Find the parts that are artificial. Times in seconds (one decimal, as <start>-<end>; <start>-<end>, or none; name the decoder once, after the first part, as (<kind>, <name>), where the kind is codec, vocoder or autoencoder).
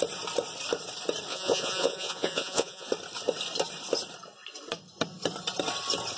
1.3-2.9 (vocoder, Vocos)